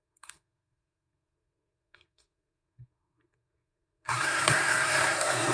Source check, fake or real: fake